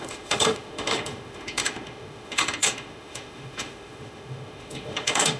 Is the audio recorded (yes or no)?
no